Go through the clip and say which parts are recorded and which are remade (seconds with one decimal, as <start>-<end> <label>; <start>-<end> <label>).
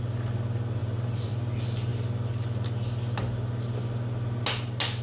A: 0.0-0.8 recorded; 0.8-1.3 remade; 1.3-5.0 recorded